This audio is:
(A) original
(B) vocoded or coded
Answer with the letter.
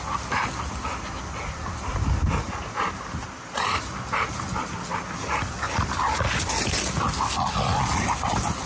A